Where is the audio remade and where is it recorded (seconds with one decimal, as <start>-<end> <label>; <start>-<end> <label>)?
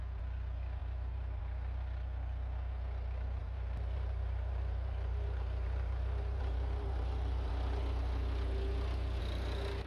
0.0-0.8 recorded; 0.8-1.4 remade; 1.4-3.4 recorded; 3.4-7.5 remade; 7.5-9.9 recorded